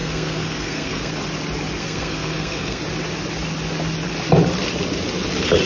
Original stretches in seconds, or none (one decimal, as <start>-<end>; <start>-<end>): 1.1-1.8; 2.8-5.7